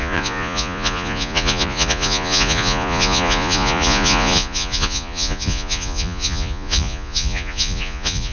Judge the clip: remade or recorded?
remade